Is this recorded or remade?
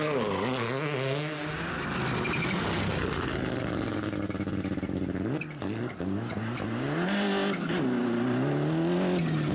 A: recorded